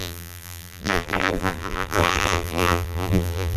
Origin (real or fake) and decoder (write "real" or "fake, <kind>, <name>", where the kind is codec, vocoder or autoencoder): fake, vocoder, BigVGAN v2